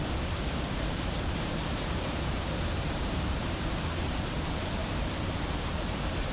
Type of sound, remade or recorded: remade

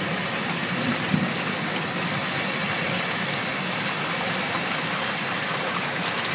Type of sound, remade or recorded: recorded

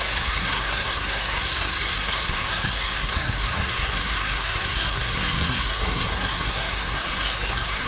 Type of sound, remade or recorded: remade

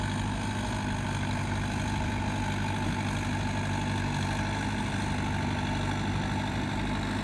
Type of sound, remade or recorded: recorded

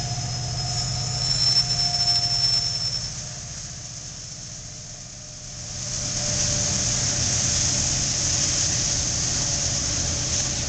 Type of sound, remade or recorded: recorded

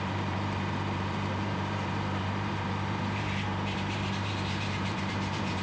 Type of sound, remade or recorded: remade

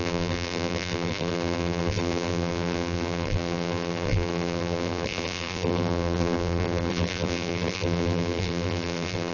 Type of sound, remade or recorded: remade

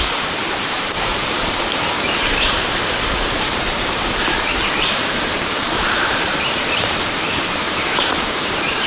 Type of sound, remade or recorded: remade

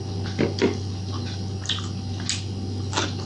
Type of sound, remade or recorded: recorded